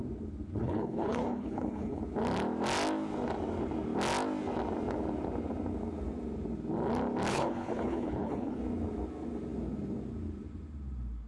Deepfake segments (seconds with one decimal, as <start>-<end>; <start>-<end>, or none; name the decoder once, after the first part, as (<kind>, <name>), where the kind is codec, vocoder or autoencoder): 0.6-2.0 (codec, HILCodec); 7.3-8.6